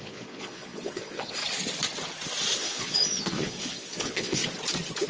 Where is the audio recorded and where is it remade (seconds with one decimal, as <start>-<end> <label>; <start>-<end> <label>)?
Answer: 0.0-1.4 remade; 1.4-2.6 recorded; 2.6-4.4 remade; 4.4-5.1 recorded